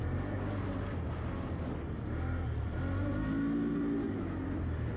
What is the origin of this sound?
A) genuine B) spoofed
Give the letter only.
A